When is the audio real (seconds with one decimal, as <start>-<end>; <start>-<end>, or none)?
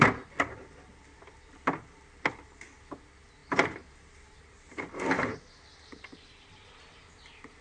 0.0-3.4; 4.9-7.6